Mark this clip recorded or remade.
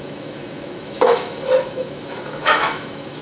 remade